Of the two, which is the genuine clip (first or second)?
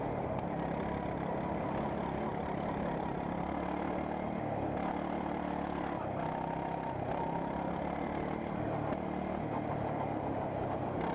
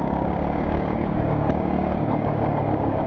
first